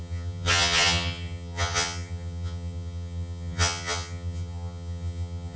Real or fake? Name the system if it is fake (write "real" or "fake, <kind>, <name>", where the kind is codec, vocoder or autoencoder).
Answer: fake, vocoder, HiFi-GAN